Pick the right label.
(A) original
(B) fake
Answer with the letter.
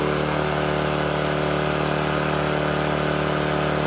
A